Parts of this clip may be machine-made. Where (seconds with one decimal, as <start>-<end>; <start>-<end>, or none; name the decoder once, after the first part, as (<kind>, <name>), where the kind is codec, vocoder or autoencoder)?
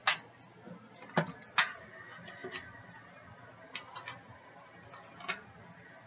none